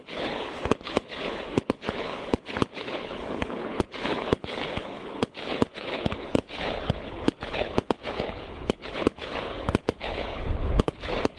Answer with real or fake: fake